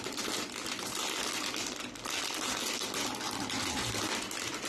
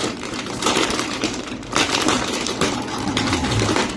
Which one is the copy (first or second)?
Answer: second